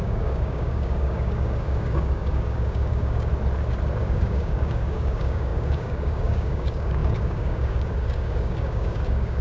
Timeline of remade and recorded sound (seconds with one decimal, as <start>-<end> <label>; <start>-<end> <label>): 0.0-3.3 remade; 3.3-4.0 recorded; 4.0-9.4 remade